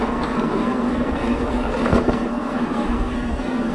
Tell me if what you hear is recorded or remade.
remade